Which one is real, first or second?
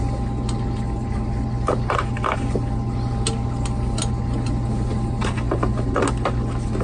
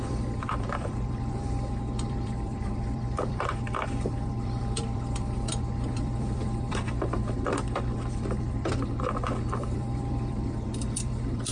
first